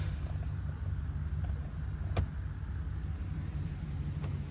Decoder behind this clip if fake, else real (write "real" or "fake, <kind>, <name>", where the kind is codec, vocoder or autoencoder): real